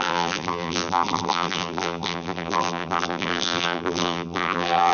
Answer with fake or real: fake